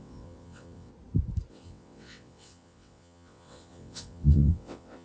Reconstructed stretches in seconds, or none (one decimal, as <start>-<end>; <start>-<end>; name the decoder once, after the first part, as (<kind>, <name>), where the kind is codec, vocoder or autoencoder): 0.0-0.9 (vocoder, WaveNeXt); 1.5-5.0